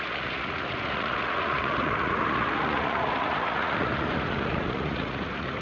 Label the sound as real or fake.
fake